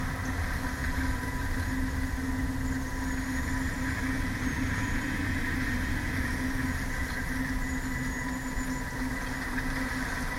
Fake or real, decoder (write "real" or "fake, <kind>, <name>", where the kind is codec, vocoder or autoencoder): real